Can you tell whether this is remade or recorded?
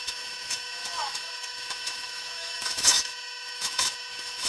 remade